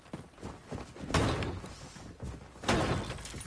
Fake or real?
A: real